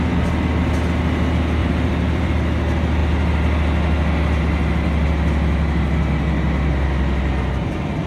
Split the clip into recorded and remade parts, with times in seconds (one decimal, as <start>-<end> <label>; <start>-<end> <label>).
0.0-1.6 recorded; 1.6-2.3 remade; 2.3-8.1 recorded